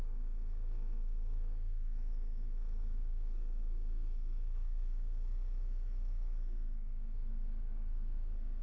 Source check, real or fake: fake